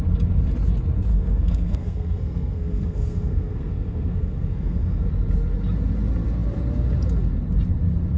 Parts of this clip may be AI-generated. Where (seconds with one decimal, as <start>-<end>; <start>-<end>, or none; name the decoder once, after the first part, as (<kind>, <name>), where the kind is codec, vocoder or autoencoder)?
1.1-5.1 (codec, SNAC)